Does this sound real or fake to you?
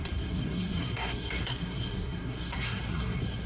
fake